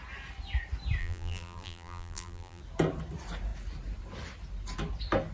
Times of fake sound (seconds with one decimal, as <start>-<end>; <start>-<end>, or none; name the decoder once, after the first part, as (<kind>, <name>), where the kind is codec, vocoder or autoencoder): 1.0-2.6 (vocoder, BigVGAN v2)

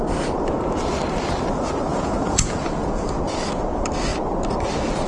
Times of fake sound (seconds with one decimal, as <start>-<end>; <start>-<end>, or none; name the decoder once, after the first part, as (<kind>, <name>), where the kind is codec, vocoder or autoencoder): 1.9-3.0 (vocoder, Vocos)

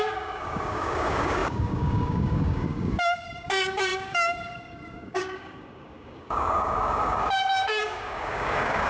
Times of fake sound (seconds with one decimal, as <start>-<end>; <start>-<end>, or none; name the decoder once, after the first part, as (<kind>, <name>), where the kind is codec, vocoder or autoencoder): 0.0-8.9 (codec, DAC)

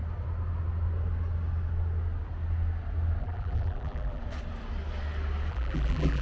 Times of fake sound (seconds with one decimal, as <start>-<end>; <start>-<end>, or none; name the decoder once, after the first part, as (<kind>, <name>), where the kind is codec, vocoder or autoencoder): 3.2-4.2 (vocoder, BigVGAN v2); 5.5-6.2

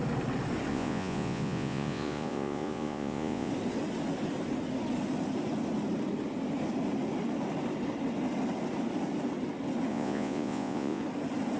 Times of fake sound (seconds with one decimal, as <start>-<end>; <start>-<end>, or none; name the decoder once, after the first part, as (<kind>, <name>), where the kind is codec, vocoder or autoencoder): 0.7-3.5 (vocoder, Vocos); 9.9-11.0

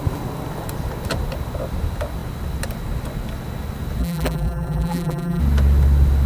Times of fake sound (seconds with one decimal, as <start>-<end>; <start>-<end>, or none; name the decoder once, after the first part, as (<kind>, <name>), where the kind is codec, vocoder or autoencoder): 4.0-5.4 (vocoder, BigVGAN v2)

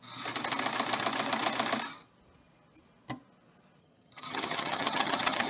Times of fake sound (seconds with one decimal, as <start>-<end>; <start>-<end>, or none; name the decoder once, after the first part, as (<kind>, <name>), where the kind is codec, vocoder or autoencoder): 3.8-5.5 (vocoder, HiFi-GAN)